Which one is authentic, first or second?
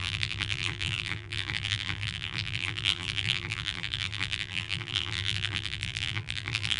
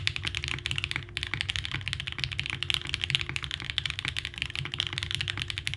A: second